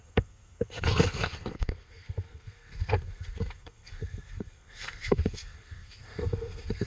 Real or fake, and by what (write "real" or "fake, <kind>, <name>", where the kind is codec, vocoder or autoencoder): fake, codec, SNAC